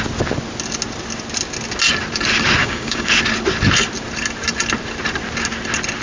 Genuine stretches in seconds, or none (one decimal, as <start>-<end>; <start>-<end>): 0.0-2.6; 3.1-6.0